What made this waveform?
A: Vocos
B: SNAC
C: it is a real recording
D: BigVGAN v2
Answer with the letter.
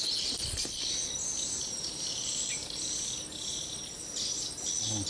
C